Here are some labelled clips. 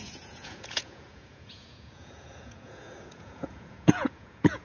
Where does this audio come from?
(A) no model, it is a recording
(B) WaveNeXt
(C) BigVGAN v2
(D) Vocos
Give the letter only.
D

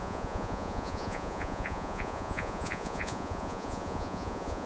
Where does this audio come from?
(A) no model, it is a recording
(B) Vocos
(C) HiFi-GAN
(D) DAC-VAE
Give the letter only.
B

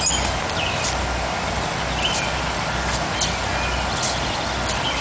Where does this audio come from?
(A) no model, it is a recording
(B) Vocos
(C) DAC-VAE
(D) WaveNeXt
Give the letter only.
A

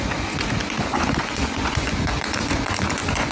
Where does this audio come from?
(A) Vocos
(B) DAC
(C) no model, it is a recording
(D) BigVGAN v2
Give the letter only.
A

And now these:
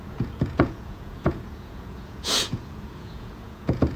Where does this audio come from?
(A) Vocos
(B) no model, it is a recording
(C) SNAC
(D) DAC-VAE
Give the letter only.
A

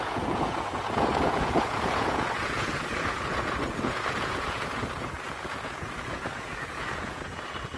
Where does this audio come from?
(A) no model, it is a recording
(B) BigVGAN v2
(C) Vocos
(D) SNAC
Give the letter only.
C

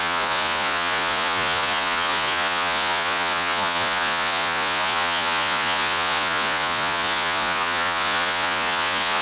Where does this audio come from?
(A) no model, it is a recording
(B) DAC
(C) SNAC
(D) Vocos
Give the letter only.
D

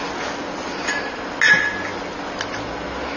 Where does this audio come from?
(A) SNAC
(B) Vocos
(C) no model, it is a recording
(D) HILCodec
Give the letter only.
C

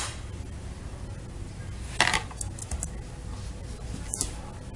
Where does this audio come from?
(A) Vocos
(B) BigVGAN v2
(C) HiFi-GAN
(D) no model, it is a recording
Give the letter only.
D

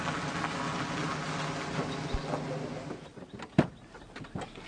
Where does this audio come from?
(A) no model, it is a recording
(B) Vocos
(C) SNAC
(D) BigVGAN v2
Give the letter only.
A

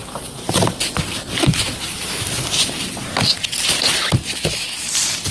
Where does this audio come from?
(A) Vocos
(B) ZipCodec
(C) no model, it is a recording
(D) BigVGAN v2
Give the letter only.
C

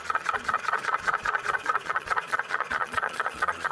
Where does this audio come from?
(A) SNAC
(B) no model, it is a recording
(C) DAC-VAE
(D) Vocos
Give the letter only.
D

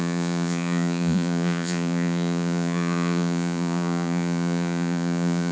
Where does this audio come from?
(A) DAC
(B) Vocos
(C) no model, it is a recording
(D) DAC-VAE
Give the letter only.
B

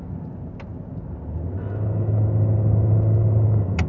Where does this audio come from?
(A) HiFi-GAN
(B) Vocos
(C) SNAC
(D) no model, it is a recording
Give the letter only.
D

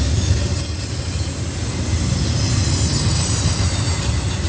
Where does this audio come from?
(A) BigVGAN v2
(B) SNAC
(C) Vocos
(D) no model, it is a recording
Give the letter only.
D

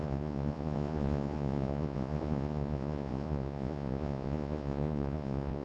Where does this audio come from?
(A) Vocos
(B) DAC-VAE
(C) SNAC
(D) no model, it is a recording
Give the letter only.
A